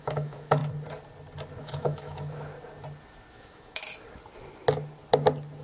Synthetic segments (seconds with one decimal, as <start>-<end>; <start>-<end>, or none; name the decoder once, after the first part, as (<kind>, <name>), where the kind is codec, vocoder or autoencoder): 0.0-0.6 (autoencoder, DAC-VAE); 1.6-2.5; 3.3-3.8

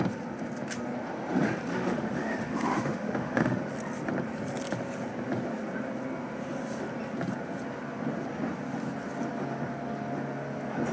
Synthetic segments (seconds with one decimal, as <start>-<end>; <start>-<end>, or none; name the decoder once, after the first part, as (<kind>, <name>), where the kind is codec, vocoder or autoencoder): 1.7-3.6 (autoencoder, DAC-VAE)

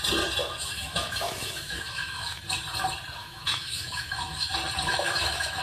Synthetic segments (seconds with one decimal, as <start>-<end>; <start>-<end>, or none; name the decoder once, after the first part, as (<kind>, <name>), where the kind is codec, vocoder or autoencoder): 0.4-2.4 (autoencoder, DAC-VAE); 3.2-4.5; 4.9-5.6

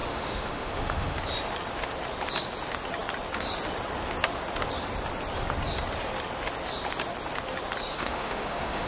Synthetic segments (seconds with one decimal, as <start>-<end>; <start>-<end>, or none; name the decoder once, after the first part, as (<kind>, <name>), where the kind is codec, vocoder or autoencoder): 0.0-1.2 (autoencoder, DAC-VAE); 7.9-8.9